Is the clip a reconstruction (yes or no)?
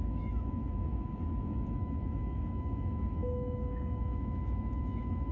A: yes